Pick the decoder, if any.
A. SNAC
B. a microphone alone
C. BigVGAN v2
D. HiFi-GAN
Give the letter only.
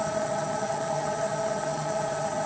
D